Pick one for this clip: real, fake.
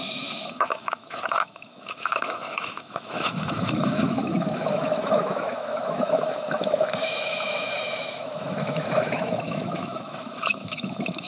fake